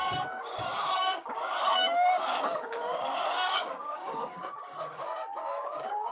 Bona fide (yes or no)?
no